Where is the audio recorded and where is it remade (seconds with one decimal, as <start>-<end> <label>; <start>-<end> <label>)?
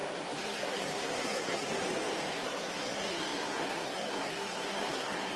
0.0-1.7 remade; 1.7-2.3 recorded; 2.3-5.4 remade